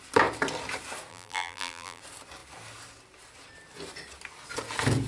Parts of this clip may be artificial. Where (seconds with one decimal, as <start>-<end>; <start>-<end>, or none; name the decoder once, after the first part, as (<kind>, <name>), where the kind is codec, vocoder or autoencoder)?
1.1-2.0 (vocoder, BigVGAN v2)